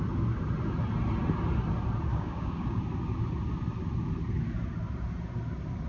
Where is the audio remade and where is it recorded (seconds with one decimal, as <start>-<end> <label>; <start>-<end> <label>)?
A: 0.0-2.1 recorded; 2.1-2.8 remade; 2.8-5.9 recorded